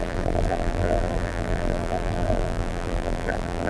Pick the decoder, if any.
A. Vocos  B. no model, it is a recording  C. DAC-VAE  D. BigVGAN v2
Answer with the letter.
D